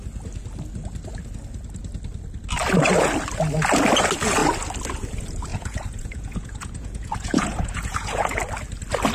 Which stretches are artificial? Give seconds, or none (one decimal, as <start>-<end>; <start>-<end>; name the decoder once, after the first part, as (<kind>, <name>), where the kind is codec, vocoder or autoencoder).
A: 5.5-8.4 (vocoder, Vocos)

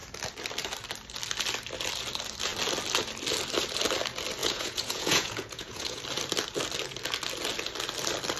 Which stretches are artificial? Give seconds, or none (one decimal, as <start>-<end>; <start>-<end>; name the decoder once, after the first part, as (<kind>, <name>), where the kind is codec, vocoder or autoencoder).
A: 4.4-6.0 (vocoder, Vocos)